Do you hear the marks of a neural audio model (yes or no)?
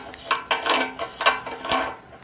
no